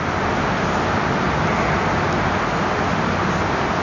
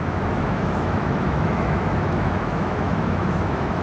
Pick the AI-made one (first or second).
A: second